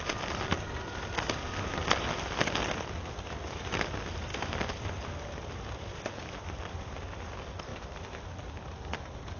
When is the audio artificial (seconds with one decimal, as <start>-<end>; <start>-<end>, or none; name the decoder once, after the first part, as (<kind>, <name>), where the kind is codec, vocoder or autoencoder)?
4.3-5.1 (vocoder, BigVGAN v2); 7.7-9.4